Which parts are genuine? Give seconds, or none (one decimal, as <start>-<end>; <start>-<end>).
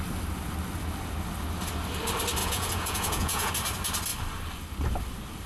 0.0-2.4; 3.5-5.5